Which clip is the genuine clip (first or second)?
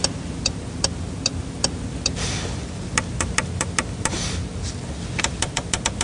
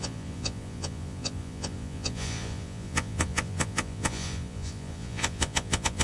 first